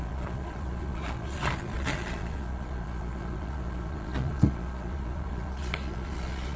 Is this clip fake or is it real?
fake